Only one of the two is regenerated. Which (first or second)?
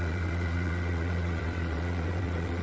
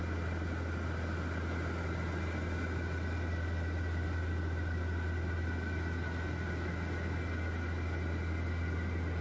first